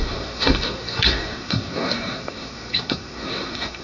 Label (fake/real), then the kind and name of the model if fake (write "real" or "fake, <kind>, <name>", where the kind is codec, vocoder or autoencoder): fake, codec, SNAC